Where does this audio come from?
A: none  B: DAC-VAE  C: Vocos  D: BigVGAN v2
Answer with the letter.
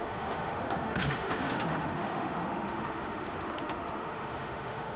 B